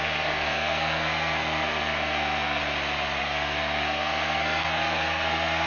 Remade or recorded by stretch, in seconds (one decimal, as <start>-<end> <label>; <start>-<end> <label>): 0.0-2.6 remade; 2.6-3.2 recorded; 3.2-5.7 remade